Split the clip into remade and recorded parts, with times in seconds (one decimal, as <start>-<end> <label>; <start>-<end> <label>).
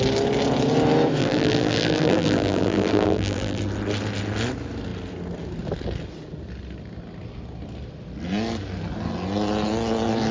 0.0-1.2 recorded; 1.2-3.6 remade; 3.6-10.3 recorded